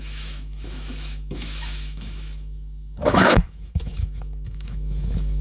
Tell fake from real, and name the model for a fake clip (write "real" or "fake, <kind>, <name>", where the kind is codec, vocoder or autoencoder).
fake, autoencoder, DAC-VAE